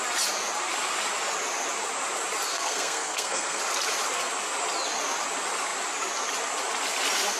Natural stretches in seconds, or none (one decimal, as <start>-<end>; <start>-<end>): 0.0-2.5; 3.6-7.4